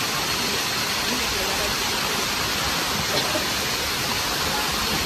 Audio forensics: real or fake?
real